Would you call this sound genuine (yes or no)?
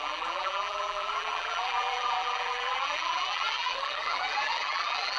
no